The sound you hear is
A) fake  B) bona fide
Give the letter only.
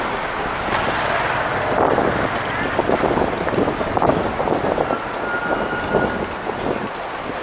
B